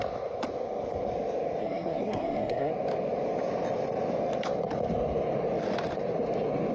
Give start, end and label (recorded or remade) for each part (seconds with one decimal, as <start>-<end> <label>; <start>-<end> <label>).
0.0-1.6 recorded; 1.6-2.7 remade; 2.7-6.7 recorded